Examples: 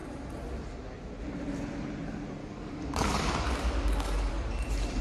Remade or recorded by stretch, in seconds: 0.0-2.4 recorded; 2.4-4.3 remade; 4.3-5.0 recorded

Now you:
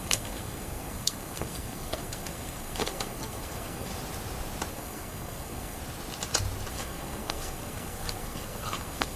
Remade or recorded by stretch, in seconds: 0.0-3.9 remade; 3.9-4.7 recorded; 4.7-5.8 remade; 5.8-6.7 recorded; 6.7-9.2 remade